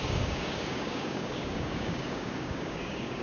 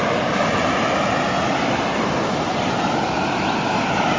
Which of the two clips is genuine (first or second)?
second